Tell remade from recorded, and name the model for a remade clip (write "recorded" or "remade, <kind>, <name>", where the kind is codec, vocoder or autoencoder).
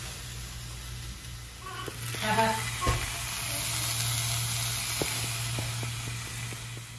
recorded